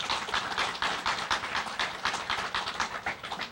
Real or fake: real